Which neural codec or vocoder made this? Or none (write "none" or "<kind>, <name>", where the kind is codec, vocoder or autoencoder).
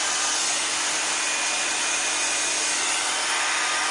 none